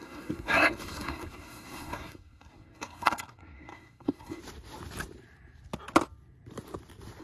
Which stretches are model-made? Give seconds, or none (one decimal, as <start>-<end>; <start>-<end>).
0.0-4.4